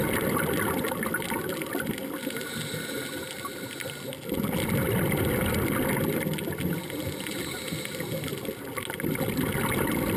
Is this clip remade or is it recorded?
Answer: recorded